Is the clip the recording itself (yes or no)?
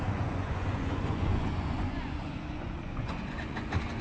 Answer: no